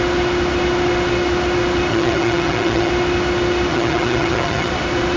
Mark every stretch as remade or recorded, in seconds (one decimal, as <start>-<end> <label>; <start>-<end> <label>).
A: 0.0-1.9 recorded; 1.9-2.9 remade; 2.9-3.7 recorded; 3.7-4.7 remade; 4.7-5.2 recorded